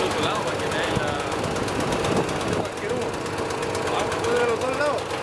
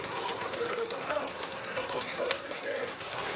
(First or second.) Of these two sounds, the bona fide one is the first